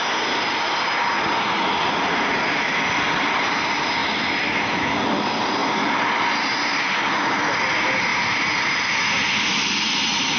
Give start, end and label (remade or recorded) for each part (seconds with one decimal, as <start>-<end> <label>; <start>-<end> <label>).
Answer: 0.0-10.4 recorded